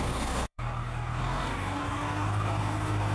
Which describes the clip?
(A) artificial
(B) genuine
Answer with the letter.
A